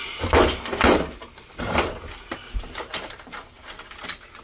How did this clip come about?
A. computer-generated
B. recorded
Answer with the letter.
B